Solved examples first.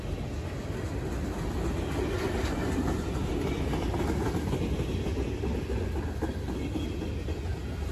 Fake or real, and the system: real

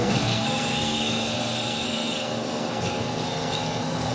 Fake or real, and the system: fake, codec, SNAC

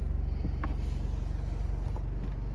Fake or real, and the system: real